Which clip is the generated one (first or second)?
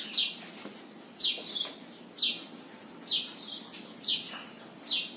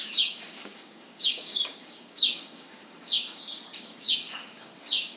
second